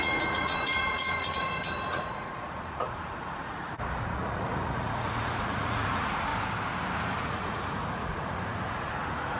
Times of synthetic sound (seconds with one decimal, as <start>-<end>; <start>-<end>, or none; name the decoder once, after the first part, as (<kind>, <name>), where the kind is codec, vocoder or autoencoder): 0.0-6.3 (vocoder, Vocos); 7.2-9.4